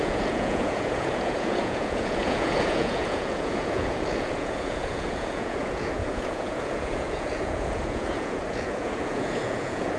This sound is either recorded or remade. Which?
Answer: remade